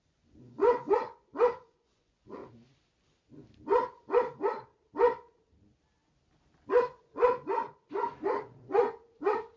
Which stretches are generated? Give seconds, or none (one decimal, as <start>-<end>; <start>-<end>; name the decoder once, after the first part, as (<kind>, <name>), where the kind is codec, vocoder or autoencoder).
0.0-2.4 (vocoder, Vocos); 6.7-7.6; 8.3-9.6